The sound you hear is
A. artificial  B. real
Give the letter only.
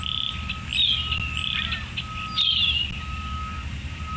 B